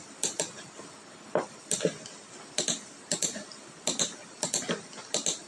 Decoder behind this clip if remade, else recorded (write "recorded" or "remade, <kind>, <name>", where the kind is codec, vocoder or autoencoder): recorded